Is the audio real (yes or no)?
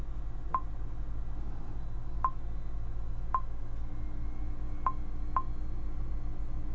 yes